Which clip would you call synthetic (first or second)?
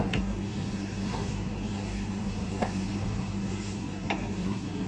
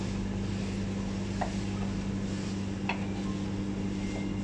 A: first